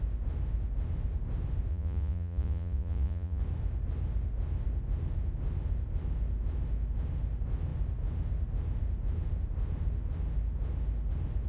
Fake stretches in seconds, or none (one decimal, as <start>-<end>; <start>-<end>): 1.7-3.4